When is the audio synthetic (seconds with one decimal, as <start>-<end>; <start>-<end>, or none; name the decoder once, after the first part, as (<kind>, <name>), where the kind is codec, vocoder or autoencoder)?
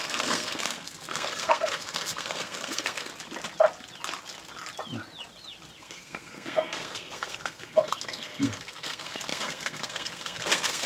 0.0-3.1 (codec, SNAC); 5.8-10.9